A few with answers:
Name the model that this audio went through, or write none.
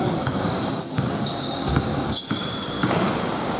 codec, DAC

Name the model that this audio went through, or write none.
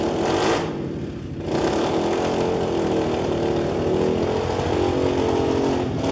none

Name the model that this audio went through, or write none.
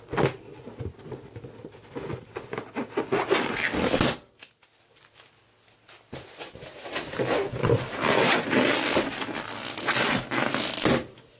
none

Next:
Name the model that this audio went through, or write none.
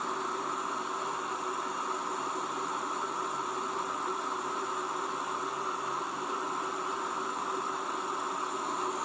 none